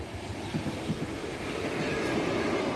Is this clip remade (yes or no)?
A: no